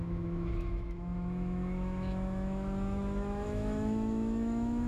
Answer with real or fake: fake